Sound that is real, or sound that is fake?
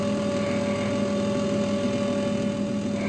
real